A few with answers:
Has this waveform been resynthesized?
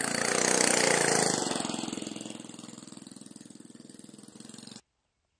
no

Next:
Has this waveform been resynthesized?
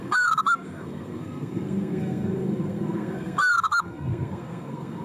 yes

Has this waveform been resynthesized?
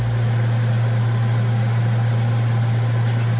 no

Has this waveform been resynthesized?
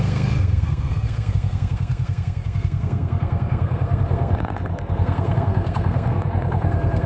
yes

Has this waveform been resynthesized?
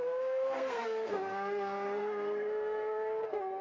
yes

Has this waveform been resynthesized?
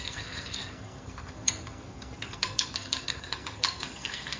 yes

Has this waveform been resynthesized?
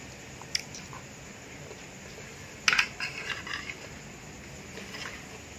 no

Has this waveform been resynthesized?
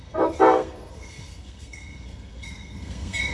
yes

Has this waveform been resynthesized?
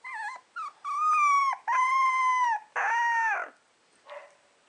no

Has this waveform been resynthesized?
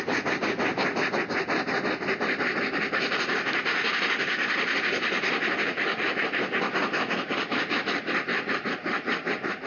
no